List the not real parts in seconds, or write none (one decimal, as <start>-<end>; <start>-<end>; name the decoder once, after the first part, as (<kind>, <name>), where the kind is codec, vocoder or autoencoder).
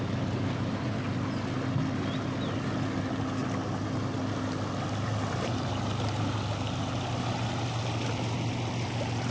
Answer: none